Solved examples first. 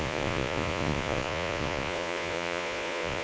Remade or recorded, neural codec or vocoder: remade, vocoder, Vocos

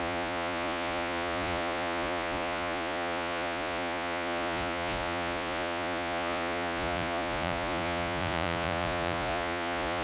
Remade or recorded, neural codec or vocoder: remade, vocoder, Vocos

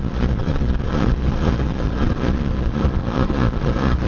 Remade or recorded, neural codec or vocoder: remade, vocoder, Vocos